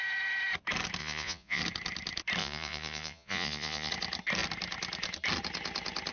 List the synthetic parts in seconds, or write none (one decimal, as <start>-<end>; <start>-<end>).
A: 1.0-1.6; 2.4-3.9